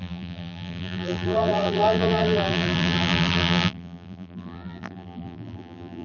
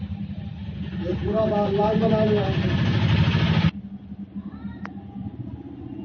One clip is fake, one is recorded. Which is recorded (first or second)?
second